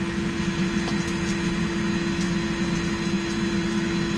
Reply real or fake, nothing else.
real